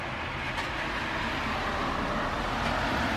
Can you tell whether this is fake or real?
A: real